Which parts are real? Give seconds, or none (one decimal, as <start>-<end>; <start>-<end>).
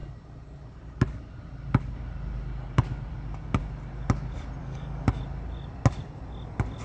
0.0-4.6; 5.2-6.8